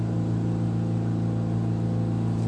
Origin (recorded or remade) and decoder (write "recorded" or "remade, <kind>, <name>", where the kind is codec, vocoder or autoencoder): recorded